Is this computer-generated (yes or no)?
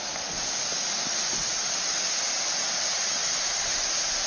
no